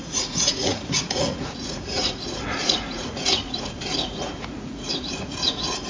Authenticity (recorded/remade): remade